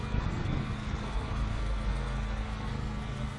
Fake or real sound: fake